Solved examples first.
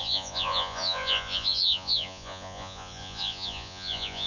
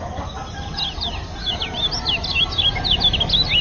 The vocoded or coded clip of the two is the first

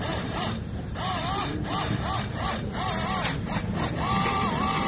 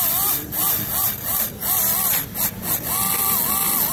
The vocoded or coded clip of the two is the first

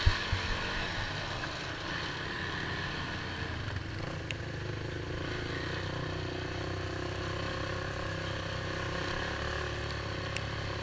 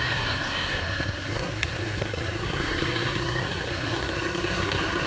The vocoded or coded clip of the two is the second